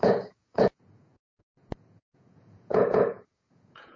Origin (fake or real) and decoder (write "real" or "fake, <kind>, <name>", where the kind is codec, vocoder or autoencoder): fake, vocoder, Vocos